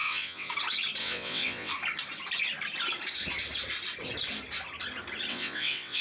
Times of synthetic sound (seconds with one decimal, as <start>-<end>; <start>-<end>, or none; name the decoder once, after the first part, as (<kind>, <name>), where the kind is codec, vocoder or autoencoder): 0.0-0.5 (vocoder, WaveNeXt); 1.0-1.7; 5.3-6.0